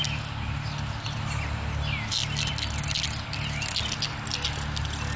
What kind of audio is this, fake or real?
real